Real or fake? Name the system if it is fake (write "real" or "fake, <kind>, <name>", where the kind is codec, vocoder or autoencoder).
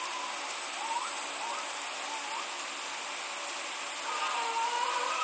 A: real